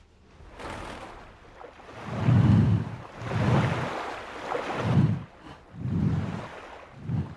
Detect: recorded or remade recorded